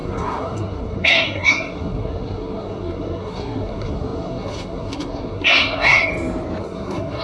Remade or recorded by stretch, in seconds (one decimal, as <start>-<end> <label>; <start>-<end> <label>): 0.0-6.1 remade; 6.1-6.6 recorded; 6.6-7.2 remade